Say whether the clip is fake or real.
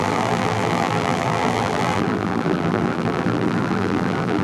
fake